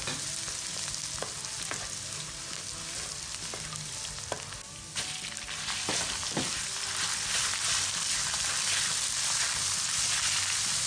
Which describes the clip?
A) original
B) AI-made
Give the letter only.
A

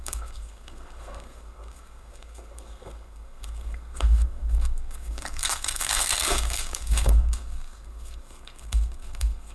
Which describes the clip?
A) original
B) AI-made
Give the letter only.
B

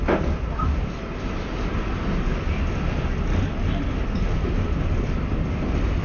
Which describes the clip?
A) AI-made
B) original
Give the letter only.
B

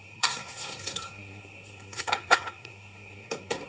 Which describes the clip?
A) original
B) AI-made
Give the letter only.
B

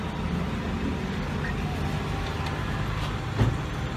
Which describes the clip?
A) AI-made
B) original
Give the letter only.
B